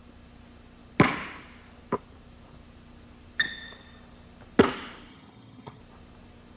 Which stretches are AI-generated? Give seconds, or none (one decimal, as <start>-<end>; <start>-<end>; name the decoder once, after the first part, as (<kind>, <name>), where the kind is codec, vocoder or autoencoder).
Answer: 5.1-5.8 (vocoder, HiFi-GAN)